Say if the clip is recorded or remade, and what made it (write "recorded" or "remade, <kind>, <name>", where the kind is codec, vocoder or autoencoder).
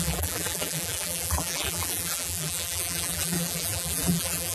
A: remade, vocoder, BigVGAN v2